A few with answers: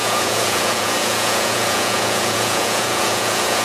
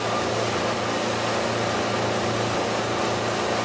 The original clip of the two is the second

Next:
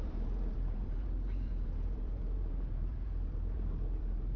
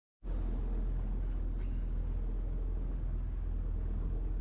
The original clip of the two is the second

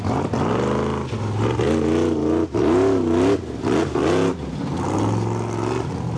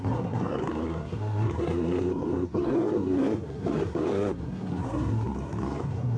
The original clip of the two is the first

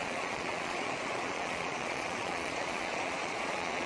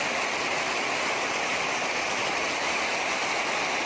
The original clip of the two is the second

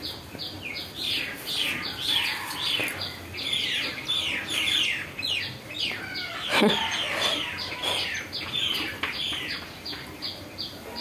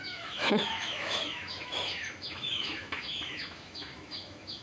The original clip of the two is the first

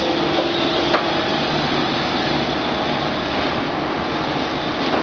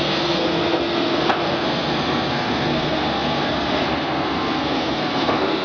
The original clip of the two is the first